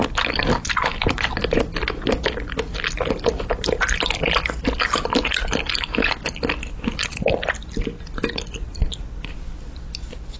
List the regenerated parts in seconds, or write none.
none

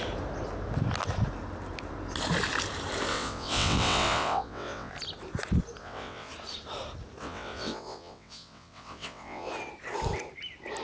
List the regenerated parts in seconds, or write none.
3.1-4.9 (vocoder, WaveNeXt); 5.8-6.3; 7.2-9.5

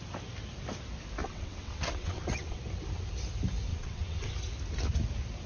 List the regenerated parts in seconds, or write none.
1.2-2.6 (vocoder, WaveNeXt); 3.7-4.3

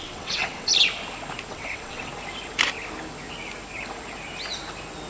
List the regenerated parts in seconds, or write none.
0.0-0.7 (vocoder, WaveNeXt); 1.5-2.1